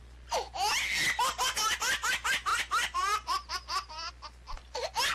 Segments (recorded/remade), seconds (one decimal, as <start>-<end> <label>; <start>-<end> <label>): 0.0-2.5 recorded; 2.5-4.1 remade; 4.1-5.1 recorded